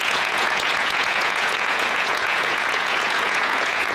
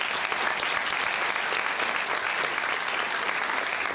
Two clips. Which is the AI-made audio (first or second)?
first